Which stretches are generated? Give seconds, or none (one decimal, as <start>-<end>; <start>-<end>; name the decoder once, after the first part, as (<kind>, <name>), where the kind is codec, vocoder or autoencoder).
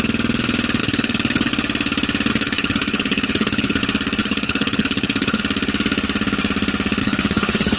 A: 0.8-1.5 (codec, HILCodec); 2.3-3.8; 4.2-5.4; 7.0-7.8